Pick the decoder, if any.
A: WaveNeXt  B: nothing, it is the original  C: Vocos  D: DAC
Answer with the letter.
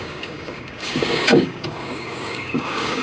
D